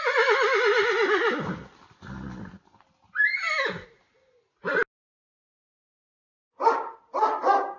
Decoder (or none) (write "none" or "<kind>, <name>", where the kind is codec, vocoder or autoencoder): none